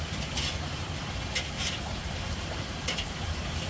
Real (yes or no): yes